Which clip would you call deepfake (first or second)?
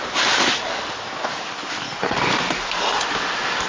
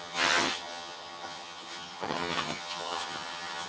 second